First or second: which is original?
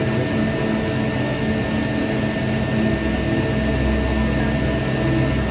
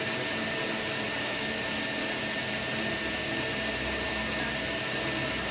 first